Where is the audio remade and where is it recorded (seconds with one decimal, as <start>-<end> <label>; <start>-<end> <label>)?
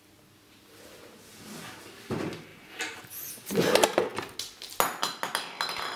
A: 0.0-6.0 recorded